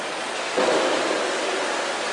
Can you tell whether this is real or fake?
real